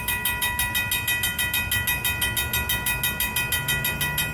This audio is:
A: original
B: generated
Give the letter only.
A